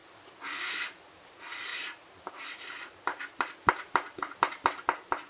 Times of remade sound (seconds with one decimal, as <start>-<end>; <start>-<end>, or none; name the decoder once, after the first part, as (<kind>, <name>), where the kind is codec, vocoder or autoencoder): 0.7-1.7 (vocoder, BigVGAN v2); 2.3-5.3